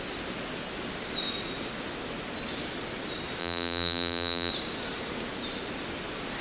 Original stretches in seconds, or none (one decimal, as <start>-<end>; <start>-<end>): 0.0-3.4; 4.5-6.4